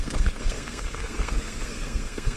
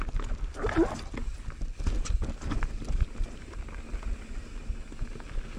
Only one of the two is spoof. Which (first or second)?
first